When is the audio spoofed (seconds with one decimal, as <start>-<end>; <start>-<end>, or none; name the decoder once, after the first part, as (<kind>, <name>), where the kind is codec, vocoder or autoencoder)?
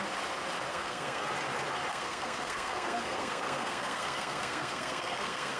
0.7-1.3 (codec, SNAC); 1.9-5.6